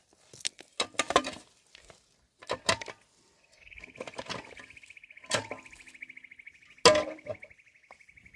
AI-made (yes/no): no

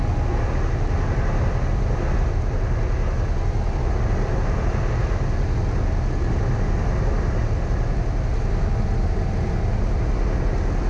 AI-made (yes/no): no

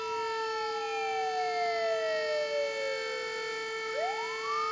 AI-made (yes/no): no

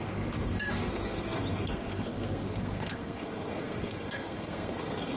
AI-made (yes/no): yes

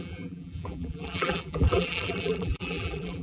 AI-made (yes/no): yes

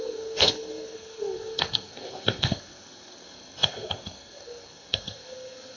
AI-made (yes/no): yes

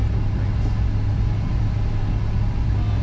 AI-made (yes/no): no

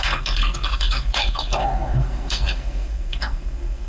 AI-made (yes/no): yes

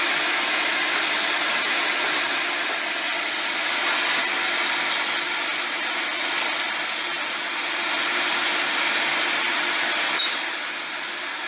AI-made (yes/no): no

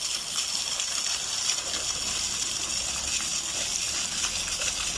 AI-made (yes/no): no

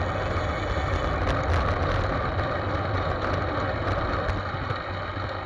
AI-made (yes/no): no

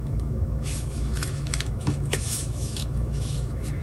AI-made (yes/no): yes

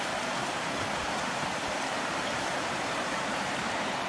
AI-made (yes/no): yes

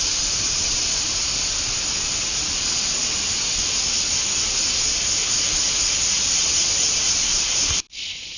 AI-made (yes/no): no